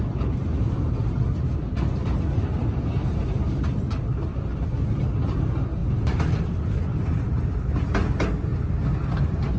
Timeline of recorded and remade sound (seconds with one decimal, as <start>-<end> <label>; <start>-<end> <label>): 0.0-2.0 recorded; 2.0-2.8 remade; 2.8-4.3 recorded; 4.3-4.9 remade; 4.9-5.8 recorded; 5.8-6.7 remade; 6.7-9.6 recorded